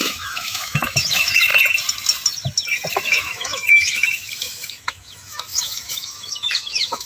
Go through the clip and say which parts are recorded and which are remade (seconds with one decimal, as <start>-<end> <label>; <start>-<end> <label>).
0.0-1.5 remade; 1.5-2.9 recorded; 2.9-7.1 remade